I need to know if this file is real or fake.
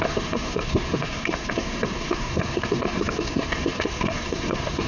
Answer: fake